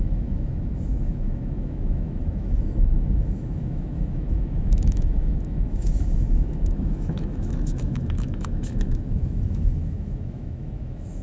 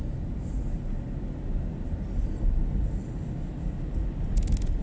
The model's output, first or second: first